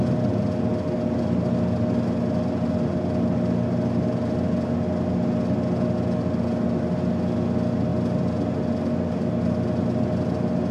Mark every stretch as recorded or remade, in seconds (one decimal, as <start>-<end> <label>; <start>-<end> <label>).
0.0-10.7 recorded